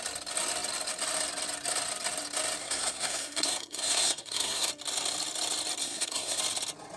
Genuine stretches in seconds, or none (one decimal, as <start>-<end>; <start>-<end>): 0.0-2.6; 4.7-5.8; 6.4-7.0